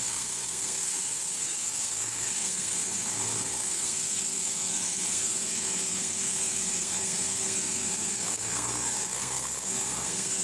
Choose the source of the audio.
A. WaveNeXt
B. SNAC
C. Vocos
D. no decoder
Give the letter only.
B